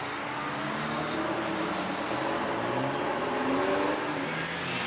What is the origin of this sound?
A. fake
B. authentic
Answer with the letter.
B